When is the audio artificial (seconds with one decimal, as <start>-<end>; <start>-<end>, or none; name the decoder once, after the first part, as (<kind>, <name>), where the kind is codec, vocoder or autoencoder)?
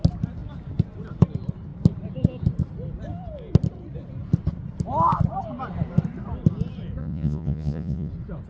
7.0-8.1 (vocoder, Vocos)